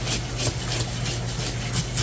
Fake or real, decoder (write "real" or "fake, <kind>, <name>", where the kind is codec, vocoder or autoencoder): real